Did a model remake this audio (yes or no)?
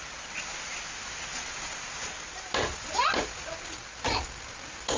no